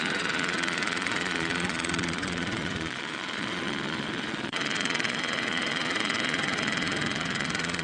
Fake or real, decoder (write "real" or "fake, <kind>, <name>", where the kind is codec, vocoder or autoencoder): fake, vocoder, Vocos